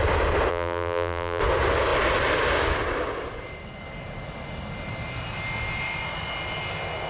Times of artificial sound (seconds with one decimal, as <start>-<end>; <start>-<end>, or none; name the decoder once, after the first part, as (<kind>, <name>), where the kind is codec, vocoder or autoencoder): 0.5-1.4 (vocoder, BigVGAN v2)

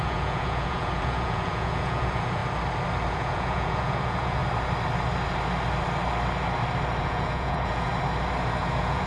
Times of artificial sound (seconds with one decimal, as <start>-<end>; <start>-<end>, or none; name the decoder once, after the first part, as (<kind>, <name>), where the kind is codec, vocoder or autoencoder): 0.0-2.4 (vocoder, Vocos); 3.1-4.4; 7.0-7.9; 8.6-9.1